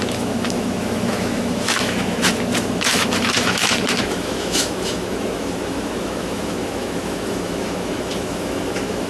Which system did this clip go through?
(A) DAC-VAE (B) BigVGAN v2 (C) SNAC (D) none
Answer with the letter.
A